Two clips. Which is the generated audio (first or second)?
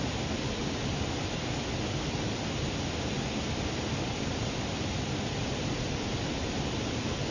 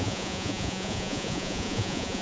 second